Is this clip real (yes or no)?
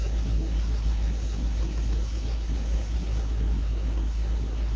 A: no